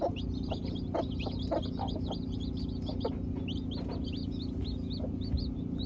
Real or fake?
real